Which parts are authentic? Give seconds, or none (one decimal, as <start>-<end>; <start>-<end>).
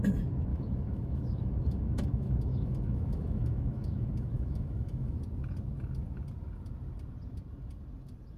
0.0-0.5; 5.2-8.4